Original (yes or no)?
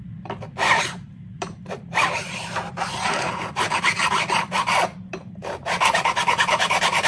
no